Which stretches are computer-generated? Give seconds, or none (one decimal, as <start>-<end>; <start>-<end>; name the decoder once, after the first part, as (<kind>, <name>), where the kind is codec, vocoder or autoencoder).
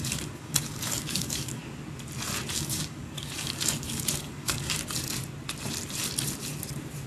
0.0-1.6 (codec, DAC); 2.5-4.8